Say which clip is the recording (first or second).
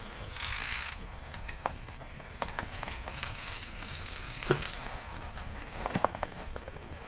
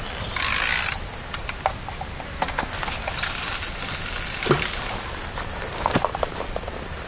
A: second